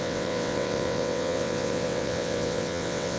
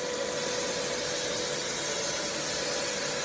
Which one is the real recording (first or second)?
second